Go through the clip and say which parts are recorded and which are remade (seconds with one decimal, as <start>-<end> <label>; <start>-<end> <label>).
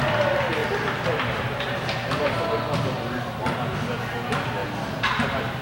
0.0-5.6 recorded